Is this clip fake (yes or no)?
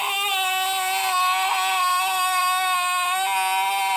no